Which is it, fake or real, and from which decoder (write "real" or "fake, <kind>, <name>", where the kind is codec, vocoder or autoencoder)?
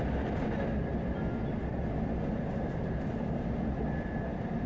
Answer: real